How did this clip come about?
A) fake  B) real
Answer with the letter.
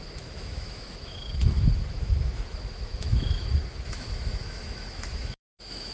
A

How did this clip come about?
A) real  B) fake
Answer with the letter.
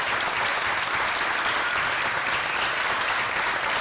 A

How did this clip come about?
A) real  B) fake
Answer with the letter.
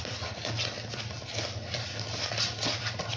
A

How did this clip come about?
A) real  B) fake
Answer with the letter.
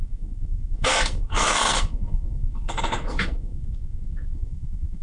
B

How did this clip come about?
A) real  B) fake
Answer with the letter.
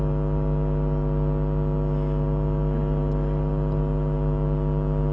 A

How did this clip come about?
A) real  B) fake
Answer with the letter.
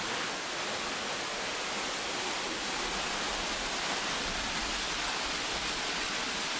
A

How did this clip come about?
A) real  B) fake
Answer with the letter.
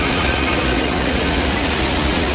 B